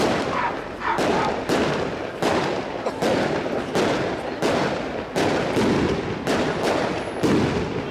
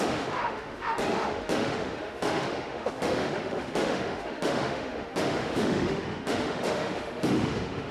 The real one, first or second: first